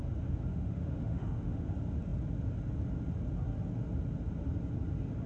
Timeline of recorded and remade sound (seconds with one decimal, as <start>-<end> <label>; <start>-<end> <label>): 0.0-0.5 recorded; 0.5-1.7 remade; 1.7-5.3 recorded